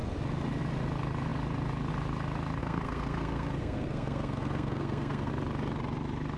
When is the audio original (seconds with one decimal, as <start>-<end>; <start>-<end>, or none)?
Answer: 0.0-2.6; 5.3-6.4